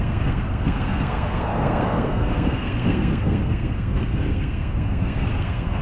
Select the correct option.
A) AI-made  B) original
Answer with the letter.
A